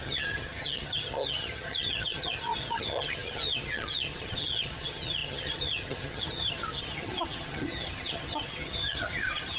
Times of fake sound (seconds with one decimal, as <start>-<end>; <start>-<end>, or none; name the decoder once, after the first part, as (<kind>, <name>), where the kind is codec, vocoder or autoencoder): 0.0-9.6 (vocoder, HiFi-GAN)